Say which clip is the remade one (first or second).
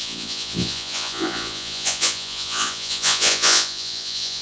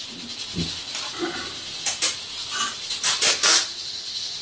first